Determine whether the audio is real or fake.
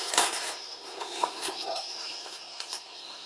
fake